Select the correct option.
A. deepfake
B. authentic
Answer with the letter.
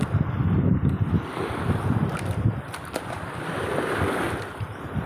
B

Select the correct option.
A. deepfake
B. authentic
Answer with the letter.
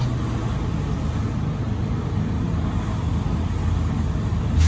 B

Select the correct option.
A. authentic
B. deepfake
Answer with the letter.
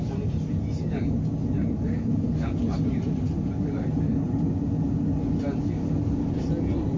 A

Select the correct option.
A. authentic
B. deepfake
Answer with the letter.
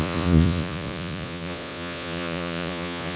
B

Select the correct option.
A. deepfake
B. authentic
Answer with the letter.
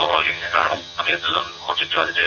A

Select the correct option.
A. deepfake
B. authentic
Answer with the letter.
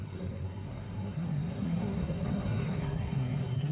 A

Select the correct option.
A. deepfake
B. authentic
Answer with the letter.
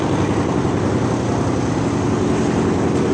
B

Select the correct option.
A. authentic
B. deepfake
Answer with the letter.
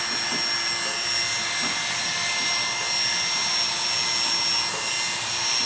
A